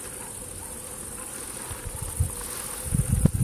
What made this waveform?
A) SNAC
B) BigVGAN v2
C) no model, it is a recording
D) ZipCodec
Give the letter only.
C